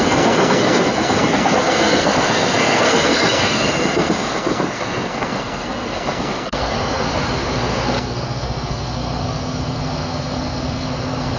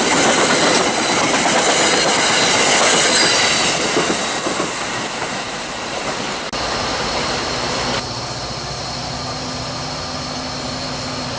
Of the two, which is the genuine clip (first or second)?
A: second